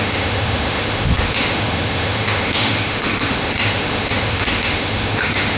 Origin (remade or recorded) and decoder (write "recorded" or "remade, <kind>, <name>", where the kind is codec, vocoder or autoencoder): remade, autoencoder, DAC-VAE